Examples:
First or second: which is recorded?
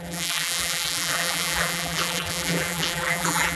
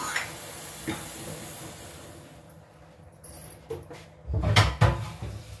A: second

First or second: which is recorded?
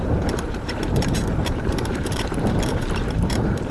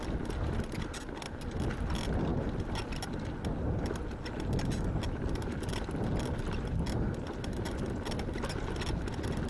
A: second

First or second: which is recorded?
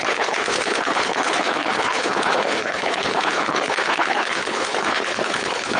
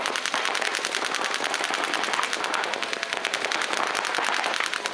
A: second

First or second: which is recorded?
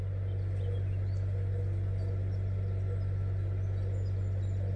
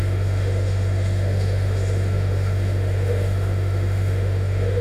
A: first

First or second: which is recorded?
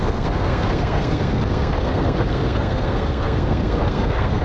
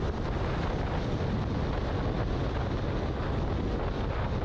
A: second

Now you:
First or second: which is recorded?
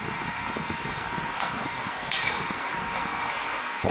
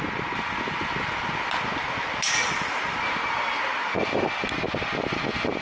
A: second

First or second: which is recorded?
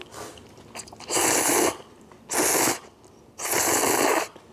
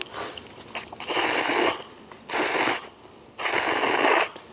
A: first